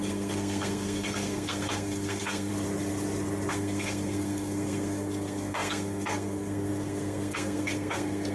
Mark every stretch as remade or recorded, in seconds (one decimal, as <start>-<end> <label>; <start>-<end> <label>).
0.0-2.5 remade; 2.5-3.5 recorded; 3.5-8.3 remade